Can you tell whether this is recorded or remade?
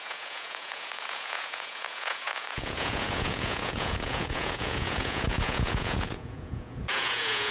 remade